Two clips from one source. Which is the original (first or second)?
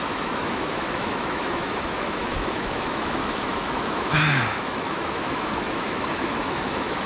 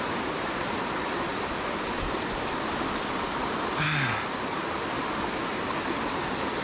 second